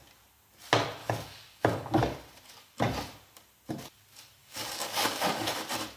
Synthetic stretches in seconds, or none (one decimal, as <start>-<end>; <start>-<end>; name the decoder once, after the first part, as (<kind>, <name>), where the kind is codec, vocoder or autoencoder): 1.0-2.0 (codec, DAC); 4.4-5.5